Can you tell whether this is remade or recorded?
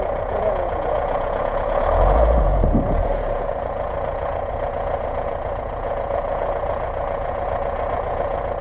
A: remade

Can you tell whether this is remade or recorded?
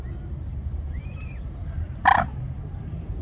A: remade